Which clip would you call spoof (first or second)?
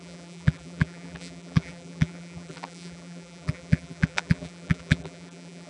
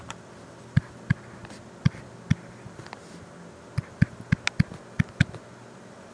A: first